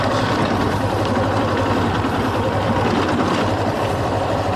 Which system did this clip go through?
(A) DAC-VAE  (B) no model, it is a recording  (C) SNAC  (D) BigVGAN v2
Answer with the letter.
B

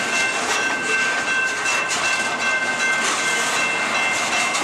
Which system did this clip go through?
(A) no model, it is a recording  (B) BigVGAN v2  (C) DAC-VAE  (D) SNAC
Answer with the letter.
A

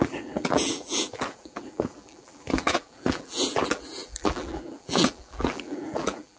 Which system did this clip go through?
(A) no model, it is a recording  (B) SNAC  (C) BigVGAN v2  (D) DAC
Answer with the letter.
C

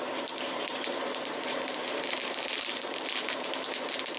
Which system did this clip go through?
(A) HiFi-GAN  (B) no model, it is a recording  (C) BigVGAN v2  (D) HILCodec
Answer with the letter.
C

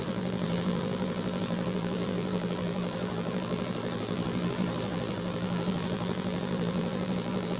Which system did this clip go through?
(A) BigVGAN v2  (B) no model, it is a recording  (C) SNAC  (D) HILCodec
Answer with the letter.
A